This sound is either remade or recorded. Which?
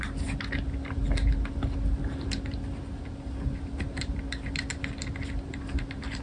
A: recorded